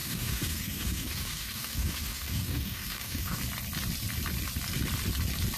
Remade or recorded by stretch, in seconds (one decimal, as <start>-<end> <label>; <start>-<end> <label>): 0.0-3.4 remade; 3.4-5.6 recorded

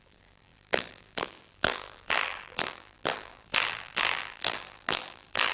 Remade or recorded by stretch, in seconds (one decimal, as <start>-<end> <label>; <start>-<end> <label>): 0.0-5.5 remade

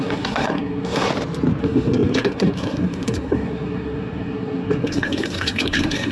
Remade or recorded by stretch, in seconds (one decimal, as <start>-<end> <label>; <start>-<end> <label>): 0.0-1.1 remade; 1.1-1.6 recorded; 1.6-6.1 remade

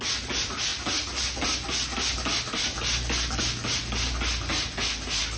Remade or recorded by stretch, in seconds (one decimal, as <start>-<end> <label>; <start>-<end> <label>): 0.0-5.4 recorded

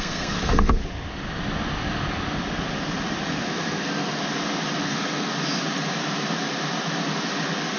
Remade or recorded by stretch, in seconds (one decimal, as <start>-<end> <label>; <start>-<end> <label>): 0.0-0.8 remade; 0.8-3.3 recorded; 3.3-4.2 remade; 4.2-4.8 recorded; 4.8-5.3 remade; 5.3-7.8 recorded